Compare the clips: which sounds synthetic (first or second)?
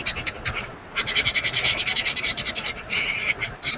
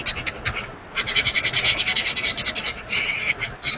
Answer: first